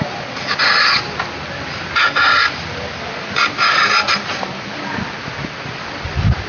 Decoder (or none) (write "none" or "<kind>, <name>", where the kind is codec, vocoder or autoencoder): none